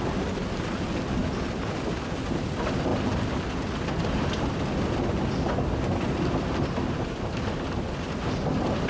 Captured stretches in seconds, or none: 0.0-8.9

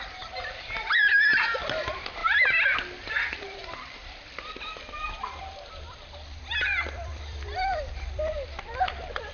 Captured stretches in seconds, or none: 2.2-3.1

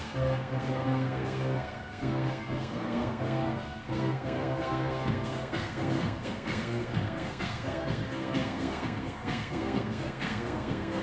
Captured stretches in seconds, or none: none

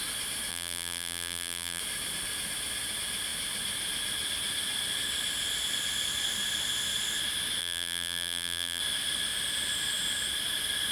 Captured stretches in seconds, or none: 0.0-0.5; 1.8-7.6; 8.8-10.9

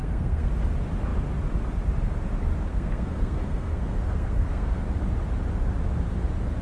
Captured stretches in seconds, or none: 0.5-2.7; 4.8-6.6

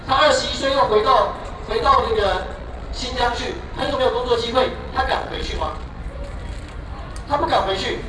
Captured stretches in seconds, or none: 0.0-1.4; 4.0-4.8; 6.0-8.1